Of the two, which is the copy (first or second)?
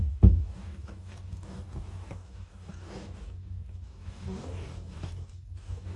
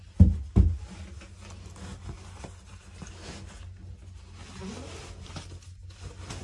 first